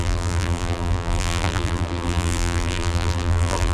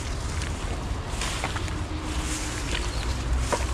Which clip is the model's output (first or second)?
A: first